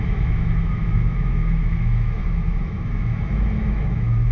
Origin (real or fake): fake